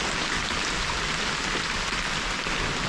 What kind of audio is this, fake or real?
real